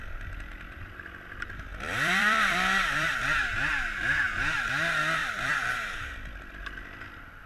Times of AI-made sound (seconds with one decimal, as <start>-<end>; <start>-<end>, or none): 1.7-3.1; 5.2-6.1